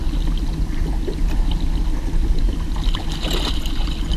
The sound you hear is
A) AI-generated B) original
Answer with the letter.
B